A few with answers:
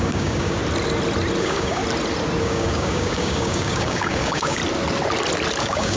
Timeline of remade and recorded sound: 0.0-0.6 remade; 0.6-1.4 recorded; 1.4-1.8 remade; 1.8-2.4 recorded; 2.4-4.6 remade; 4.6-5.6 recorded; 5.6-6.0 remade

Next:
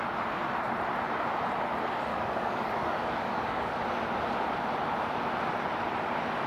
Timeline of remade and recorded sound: 0.0-2.1 recorded; 2.1-3.8 remade; 3.8-6.5 recorded